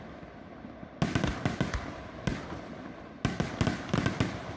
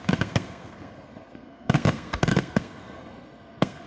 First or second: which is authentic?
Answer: first